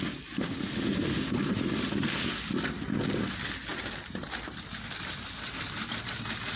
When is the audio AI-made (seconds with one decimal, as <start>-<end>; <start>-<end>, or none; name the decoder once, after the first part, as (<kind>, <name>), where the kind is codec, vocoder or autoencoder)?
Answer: 3.7-5.9 (vocoder, BigVGAN v2)